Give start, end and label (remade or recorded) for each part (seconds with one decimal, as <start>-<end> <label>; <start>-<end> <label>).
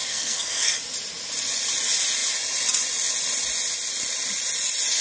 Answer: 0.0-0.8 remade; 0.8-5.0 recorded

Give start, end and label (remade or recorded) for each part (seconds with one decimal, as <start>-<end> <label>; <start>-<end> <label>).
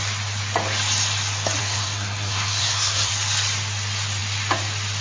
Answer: 0.0-1.6 recorded; 1.6-3.1 remade; 3.1-5.0 recorded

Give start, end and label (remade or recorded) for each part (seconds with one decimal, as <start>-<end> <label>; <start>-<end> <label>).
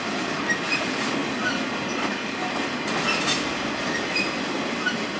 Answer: 0.0-5.2 recorded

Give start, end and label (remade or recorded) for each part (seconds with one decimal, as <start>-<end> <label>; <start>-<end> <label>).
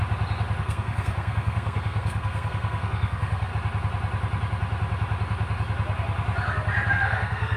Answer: 0.0-0.6 recorded; 0.6-3.5 remade; 3.5-6.9 recorded; 6.9-7.6 remade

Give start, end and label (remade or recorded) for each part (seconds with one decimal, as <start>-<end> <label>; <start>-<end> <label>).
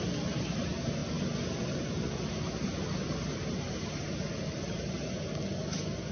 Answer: 0.0-6.1 recorded